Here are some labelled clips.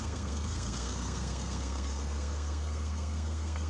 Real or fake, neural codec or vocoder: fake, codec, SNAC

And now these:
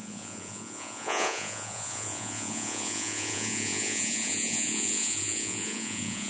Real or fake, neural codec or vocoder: fake, vocoder, Vocos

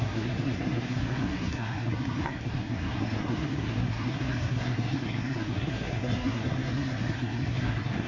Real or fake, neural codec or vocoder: fake, codec, SNAC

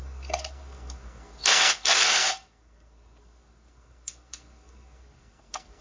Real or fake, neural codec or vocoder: fake, codec, SNAC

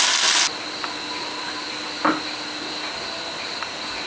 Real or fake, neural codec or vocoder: real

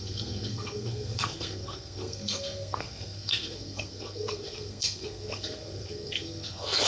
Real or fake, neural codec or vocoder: fake, codec, SNAC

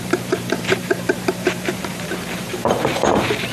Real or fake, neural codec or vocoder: fake, vocoder, BigVGAN v2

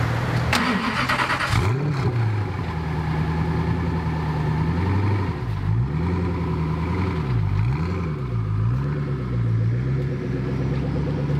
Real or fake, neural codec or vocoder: real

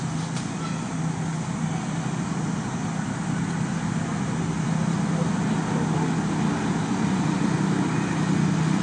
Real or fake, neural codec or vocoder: real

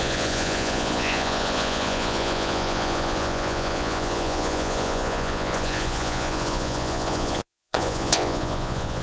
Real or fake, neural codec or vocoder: fake, vocoder, Vocos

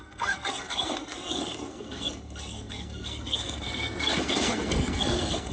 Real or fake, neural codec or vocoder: fake, codec, SNAC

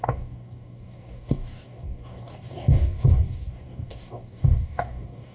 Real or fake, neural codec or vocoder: fake, codec, DAC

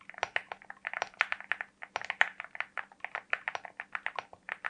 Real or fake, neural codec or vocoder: real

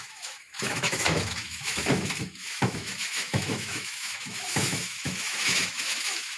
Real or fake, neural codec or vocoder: fake, autoencoder, DAC-VAE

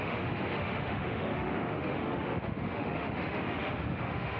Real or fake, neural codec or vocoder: fake, autoencoder, DAC-VAE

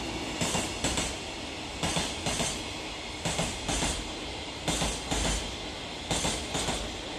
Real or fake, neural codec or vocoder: real